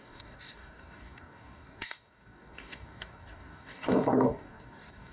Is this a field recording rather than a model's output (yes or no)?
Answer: no